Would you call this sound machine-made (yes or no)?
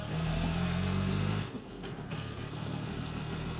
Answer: yes